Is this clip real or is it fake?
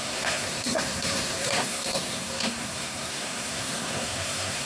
fake